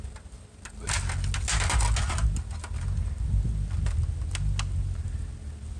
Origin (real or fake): real